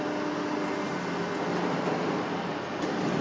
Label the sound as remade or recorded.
recorded